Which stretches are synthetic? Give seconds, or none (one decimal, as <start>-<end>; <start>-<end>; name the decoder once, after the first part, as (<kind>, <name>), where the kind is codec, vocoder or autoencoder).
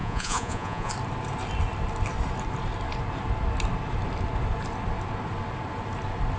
0.0-0.9 (vocoder, Vocos)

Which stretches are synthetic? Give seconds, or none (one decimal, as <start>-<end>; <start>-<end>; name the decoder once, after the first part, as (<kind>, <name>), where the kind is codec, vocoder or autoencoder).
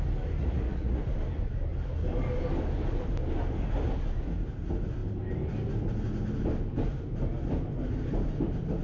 0.4-1.0 (vocoder, Vocos)